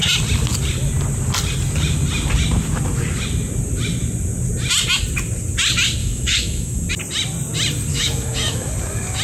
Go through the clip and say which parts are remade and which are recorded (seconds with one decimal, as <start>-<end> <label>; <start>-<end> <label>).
0.0-6.0 recorded; 6.0-6.9 remade; 6.9-7.9 recorded; 7.9-8.7 remade; 8.7-9.2 recorded